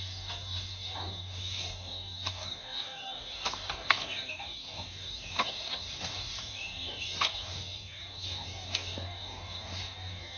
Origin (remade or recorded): remade